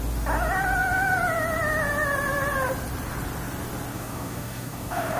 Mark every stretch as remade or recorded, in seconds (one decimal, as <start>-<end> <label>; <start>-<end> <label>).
0.0-3.9 recorded; 3.9-5.2 remade